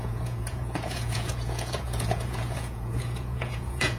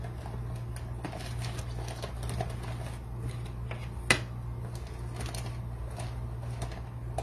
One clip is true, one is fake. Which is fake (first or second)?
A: first